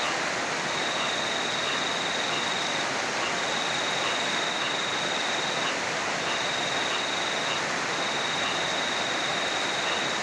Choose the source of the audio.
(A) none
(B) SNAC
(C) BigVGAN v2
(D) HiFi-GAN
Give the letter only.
A